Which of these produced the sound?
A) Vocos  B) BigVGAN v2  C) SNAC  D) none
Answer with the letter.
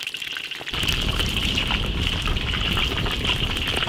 B